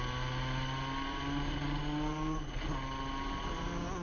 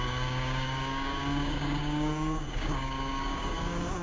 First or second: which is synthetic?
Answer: second